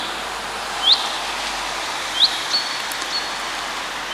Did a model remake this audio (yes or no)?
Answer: no